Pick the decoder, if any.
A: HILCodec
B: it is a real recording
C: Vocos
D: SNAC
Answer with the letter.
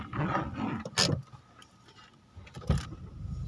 B